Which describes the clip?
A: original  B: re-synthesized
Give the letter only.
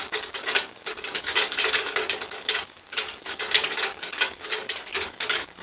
B